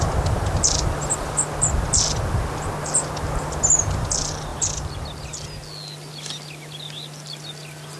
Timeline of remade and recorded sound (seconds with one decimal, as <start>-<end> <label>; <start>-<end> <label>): 0.0-8.0 recorded